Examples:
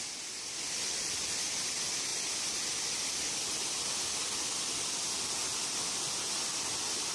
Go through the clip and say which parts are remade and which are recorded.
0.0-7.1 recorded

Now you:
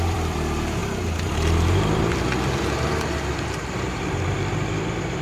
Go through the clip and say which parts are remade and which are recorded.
0.0-0.8 remade; 0.8-3.9 recorded; 3.9-5.2 remade

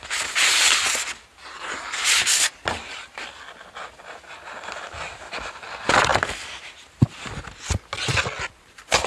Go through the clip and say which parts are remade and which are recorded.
0.0-9.1 recorded

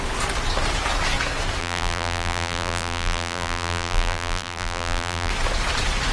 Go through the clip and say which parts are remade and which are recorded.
0.0-1.6 recorded; 1.6-5.3 remade; 5.3-6.1 recorded